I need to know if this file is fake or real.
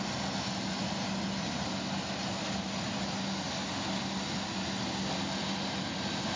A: real